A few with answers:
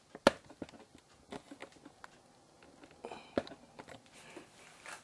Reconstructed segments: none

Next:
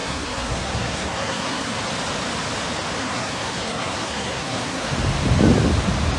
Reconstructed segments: 0.0-1.8 (codec, SNAC); 3.0-4.9

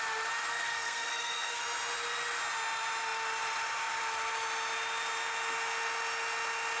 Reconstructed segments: 0.5-1.6 (codec, SNAC)

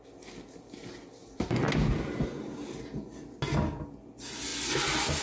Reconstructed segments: none

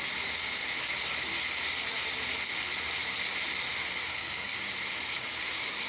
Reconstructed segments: 0.0-0.6 (codec, DAC); 4.1-4.5; 5.1-5.9

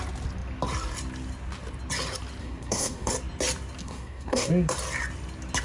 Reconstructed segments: 2.4-3.1 (codec, SNAC); 3.8-4.5